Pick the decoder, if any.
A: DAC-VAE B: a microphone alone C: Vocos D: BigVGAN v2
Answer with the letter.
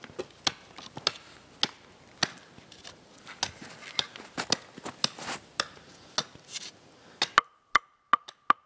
B